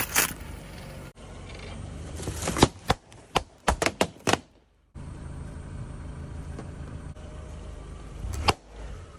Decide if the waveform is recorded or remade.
remade